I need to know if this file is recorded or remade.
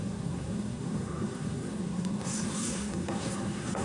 remade